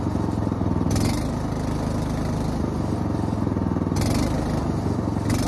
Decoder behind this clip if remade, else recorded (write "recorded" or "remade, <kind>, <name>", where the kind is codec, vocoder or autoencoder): recorded